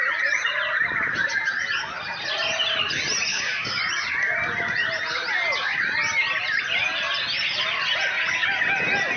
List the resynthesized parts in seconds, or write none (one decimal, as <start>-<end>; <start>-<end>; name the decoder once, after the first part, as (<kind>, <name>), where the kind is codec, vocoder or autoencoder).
3.3-3.8 (codec, DAC)